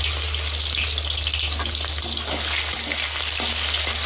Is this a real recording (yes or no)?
yes